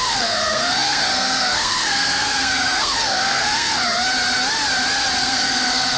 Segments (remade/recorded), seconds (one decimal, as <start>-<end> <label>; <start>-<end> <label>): 0.0-3.8 remade; 3.8-5.2 recorded; 5.2-6.0 remade